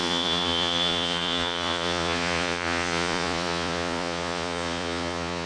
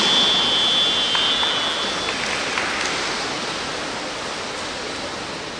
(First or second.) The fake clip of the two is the first